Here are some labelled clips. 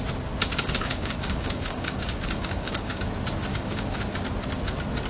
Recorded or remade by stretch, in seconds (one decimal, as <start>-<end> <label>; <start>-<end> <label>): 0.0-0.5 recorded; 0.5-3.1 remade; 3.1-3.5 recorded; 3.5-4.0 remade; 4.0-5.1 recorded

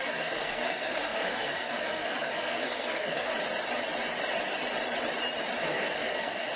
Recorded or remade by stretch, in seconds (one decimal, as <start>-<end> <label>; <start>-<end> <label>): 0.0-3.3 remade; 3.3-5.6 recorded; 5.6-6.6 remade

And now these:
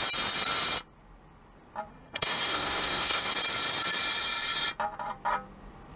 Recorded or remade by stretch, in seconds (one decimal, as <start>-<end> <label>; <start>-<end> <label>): 0.0-1.9 recorded; 1.9-3.3 remade; 3.3-6.0 recorded

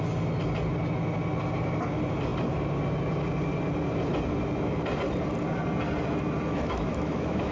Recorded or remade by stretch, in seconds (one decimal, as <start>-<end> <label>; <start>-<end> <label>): 0.0-6.5 recorded; 6.5-7.5 remade

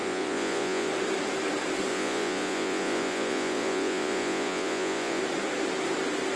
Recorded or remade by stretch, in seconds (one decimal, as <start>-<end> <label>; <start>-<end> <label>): 0.0-0.9 remade; 0.9-1.9 recorded; 1.9-5.2 remade; 5.2-6.4 recorded